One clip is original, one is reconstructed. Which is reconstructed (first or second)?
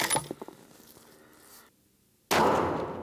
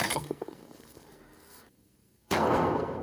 second